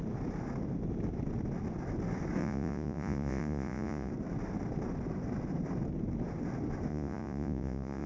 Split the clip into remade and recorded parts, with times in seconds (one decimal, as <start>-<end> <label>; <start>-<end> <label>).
0.0-2.4 recorded; 2.4-4.1 remade; 4.1-6.9 recorded; 6.9-8.1 remade